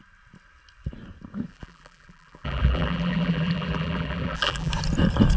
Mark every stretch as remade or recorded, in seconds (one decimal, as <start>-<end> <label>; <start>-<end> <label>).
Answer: 0.0-1.5 recorded; 1.5-4.7 remade; 4.7-5.4 recorded